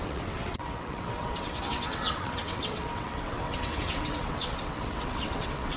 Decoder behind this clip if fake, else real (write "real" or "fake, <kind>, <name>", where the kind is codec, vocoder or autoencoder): fake, vocoder, WaveNeXt